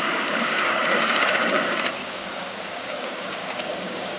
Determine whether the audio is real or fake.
fake